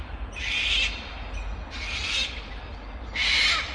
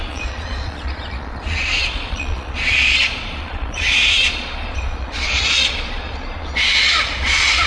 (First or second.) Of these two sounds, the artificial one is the second